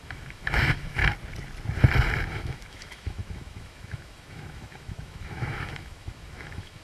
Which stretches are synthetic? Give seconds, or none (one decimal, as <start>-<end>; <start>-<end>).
0.0-1.0; 2.3-6.8